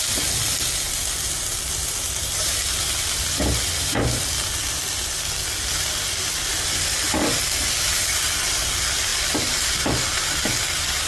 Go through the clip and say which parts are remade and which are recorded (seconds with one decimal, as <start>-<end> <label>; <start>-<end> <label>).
0.0-1.5 recorded; 1.5-4.8 remade; 4.8-11.1 recorded